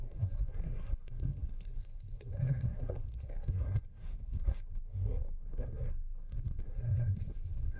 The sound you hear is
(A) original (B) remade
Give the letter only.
B